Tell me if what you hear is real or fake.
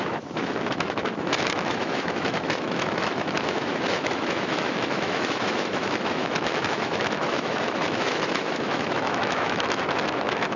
fake